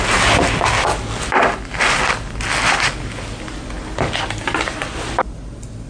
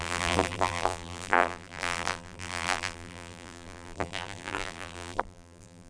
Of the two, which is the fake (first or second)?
second